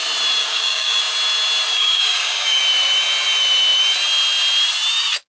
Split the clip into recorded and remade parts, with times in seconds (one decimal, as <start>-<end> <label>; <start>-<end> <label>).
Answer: 0.0-0.4 recorded; 0.4-1.0 remade; 1.0-1.7 recorded; 1.7-2.6 remade; 2.6-5.3 recorded